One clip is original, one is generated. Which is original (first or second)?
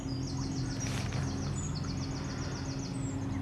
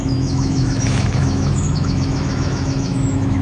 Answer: first